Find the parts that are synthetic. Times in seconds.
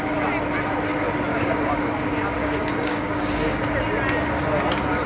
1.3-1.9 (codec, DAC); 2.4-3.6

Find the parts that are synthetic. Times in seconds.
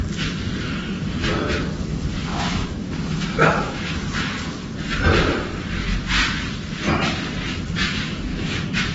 2.3-4.0 (autoencoder, DAC-VAE); 8.3-8.9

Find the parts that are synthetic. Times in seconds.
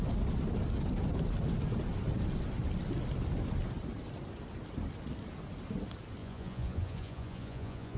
6.2-8.0 (vocoder, Vocos)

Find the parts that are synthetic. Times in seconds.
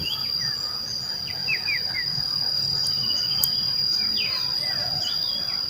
none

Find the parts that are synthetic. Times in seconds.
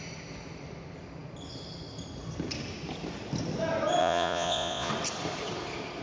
4.0-4.9 (vocoder, Vocos)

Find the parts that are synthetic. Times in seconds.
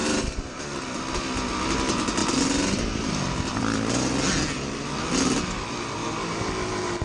0.0-0.6 (vocoder, BigVGAN v2)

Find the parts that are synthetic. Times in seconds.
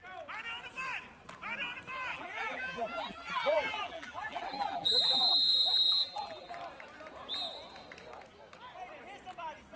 2.1-6.5 (vocoder, BigVGAN v2)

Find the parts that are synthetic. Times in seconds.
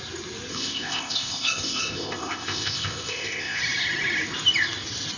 0.5-3.6 (codec, ZipCodec)